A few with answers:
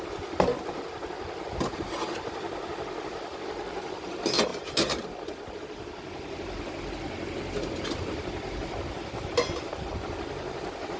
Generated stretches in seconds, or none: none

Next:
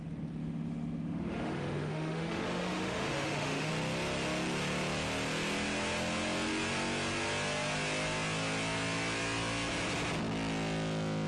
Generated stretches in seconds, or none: 0.4-3.7

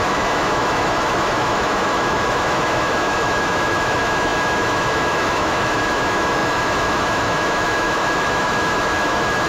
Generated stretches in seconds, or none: 0.0-9.5

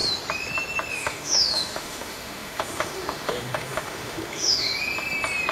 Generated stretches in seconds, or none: 0.9-4.7

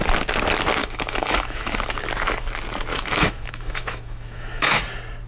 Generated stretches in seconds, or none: 0.8-1.8; 2.9-4.8

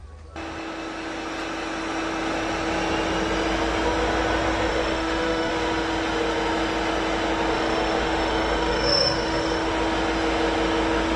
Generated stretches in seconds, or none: 4.7-5.5; 7.5-9.7